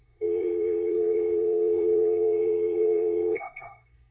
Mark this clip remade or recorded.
remade